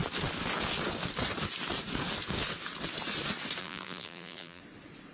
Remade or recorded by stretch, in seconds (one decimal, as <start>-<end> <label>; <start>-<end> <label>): 0.0-3.6 recorded; 3.6-4.6 remade; 4.6-5.1 recorded